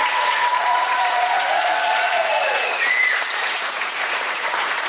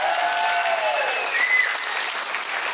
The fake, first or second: first